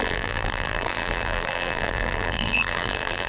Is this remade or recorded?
remade